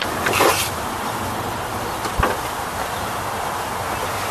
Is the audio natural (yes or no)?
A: yes